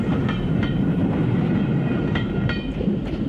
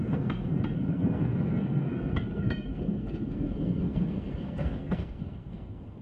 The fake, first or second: second